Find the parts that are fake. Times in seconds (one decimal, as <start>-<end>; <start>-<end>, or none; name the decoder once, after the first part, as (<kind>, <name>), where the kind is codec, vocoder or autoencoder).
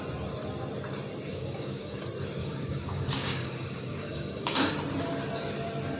1.3-2.0 (codec, DAC); 2.4-4.7